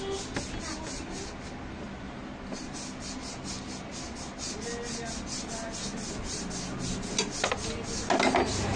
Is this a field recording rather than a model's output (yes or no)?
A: yes